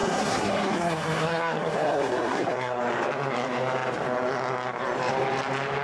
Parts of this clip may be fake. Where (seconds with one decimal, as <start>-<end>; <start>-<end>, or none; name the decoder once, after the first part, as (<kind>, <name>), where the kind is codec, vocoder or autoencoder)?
0.0-2.8 (codec, SNAC)